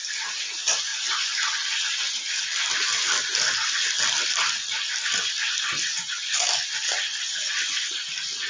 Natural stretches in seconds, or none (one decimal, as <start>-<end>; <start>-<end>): 0.0-8.5